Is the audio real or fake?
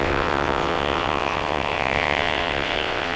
fake